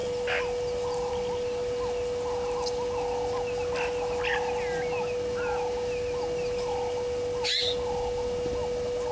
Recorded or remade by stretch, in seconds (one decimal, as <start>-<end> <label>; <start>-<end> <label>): 0.0-9.1 recorded